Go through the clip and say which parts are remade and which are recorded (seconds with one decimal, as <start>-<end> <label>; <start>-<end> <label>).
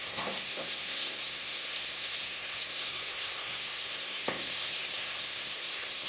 0.0-6.1 remade